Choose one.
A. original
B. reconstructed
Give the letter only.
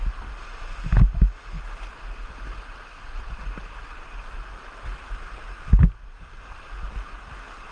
A